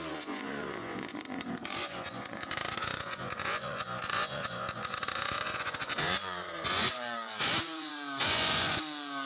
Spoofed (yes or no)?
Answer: yes